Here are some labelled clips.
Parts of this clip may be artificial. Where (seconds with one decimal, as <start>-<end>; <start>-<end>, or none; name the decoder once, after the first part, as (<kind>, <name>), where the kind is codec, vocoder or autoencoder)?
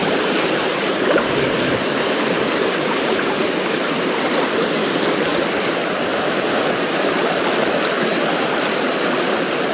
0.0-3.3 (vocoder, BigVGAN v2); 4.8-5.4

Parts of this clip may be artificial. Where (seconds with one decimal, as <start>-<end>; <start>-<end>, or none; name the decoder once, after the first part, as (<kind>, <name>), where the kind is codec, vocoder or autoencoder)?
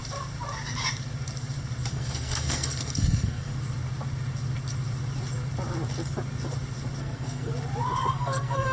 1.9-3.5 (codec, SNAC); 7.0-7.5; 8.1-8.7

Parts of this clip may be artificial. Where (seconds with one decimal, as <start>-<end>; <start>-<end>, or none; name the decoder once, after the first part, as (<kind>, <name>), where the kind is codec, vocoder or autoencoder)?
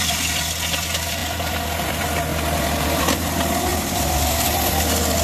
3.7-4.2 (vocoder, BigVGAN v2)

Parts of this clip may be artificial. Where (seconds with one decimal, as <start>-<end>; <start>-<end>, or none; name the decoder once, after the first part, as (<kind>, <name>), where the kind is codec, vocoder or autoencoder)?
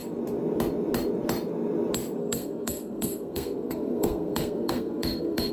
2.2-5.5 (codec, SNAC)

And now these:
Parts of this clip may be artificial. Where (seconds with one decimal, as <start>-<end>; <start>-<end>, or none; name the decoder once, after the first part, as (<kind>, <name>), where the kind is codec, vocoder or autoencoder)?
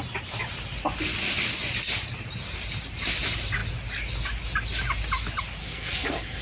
5.6-6.4 (codec, SNAC)